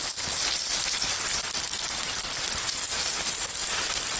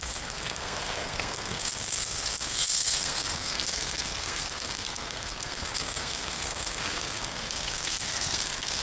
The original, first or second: first